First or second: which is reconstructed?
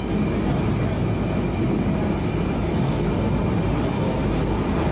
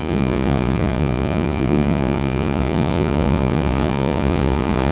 second